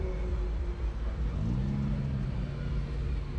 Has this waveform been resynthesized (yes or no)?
no